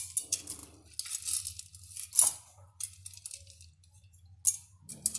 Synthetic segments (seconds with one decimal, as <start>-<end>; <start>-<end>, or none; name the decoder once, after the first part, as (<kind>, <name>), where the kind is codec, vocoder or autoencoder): none